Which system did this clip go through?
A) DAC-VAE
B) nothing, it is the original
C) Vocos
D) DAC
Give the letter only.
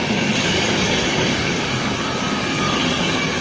D